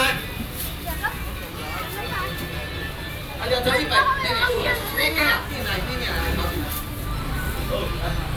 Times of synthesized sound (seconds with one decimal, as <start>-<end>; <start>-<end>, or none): 4.4-5.3